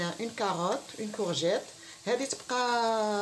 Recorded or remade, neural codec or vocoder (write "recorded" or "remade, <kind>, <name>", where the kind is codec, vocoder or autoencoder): recorded